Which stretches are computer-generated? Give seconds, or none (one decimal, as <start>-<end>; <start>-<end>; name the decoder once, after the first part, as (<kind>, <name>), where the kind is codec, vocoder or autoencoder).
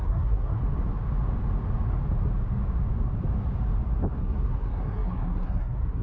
0.0-0.6 (codec, SNAC); 4.2-6.0